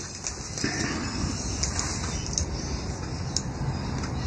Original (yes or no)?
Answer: yes